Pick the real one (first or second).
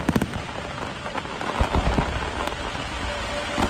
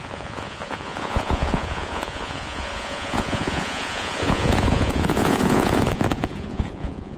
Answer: first